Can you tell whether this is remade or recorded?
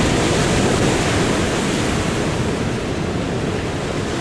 recorded